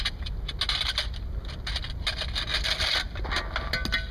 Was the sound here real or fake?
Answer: real